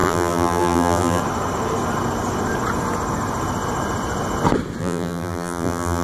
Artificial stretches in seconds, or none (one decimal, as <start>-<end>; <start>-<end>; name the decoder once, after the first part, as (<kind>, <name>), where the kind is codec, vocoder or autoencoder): 0.0-1.2 (vocoder, BigVGAN v2); 4.8-6.0